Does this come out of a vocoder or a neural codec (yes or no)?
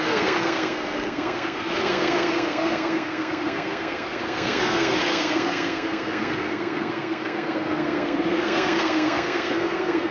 yes